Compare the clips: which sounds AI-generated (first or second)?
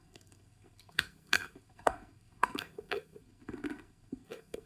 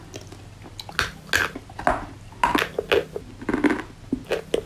first